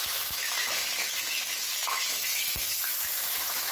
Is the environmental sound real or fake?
fake